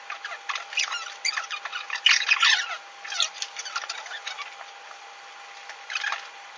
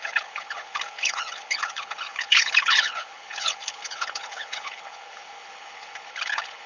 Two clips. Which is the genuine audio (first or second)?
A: first